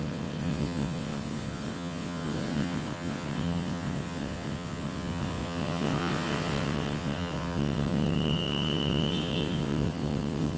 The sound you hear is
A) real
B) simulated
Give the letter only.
B